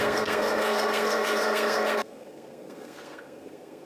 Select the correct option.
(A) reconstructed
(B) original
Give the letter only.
A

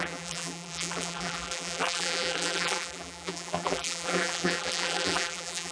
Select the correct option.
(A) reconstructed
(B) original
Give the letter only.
A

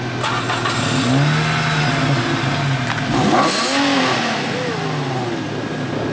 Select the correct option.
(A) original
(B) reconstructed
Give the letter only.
A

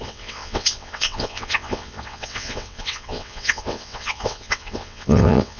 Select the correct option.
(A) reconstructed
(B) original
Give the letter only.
A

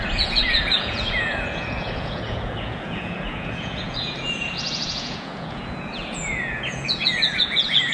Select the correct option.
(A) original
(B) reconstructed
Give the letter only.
B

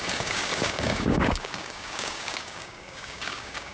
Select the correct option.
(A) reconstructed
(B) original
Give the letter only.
A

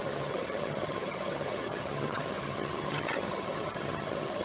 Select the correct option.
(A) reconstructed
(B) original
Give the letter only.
A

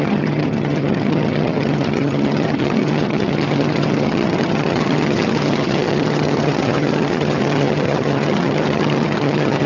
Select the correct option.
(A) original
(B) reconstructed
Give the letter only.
B